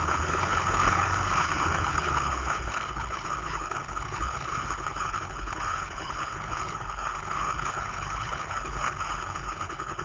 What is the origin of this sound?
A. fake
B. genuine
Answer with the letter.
A